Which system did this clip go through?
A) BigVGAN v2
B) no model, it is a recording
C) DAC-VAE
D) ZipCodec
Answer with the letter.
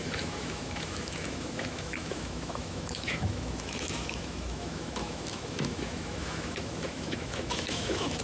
C